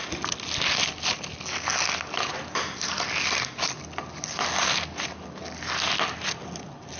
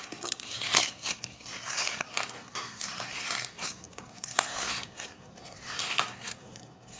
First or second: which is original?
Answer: first